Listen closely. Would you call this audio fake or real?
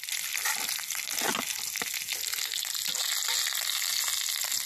real